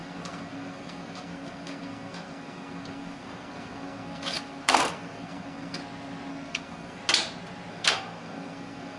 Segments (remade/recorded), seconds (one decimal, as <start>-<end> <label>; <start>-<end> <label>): 0.0-5.8 remade; 5.8-6.3 recorded; 6.3-7.0 remade; 7.0-7.7 recorded; 7.7-9.0 remade